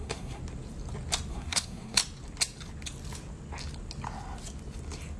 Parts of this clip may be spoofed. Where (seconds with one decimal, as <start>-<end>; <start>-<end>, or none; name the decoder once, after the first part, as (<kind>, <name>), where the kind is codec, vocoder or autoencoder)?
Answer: 0.0-0.4 (codec, SNAC); 1.3-2.0